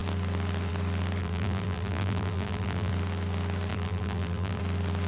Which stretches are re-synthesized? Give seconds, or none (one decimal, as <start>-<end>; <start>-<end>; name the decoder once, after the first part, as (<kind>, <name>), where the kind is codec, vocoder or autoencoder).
1.2-2.9 (vocoder, BigVGAN v2); 3.7-4.6